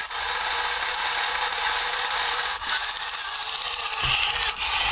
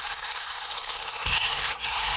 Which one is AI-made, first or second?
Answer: second